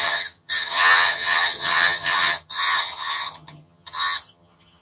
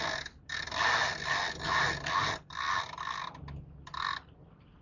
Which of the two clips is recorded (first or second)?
second